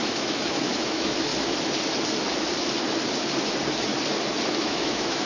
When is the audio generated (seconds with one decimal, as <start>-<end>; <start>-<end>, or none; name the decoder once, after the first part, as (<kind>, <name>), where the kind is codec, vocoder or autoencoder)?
0.0-1.3 (autoencoder, DAC-VAE); 4.5-5.3